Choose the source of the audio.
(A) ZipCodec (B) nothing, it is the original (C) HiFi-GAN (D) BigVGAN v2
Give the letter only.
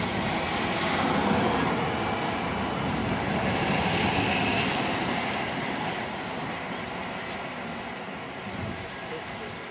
B